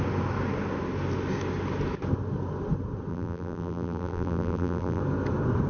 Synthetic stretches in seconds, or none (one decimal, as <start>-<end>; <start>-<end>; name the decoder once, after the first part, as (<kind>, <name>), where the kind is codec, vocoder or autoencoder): 3.1-5.0 (vocoder, BigVGAN v2)